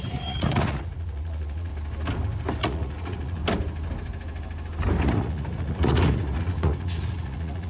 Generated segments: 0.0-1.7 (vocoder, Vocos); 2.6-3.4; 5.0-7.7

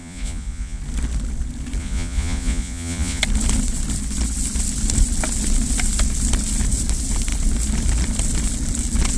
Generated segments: 0.0-0.8 (vocoder, Vocos); 1.8-3.2

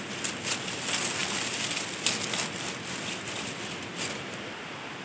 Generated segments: none

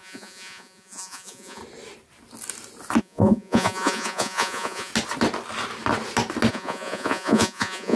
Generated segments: 0.0-1.6 (vocoder, Vocos); 3.0-4.9; 6.5-8.0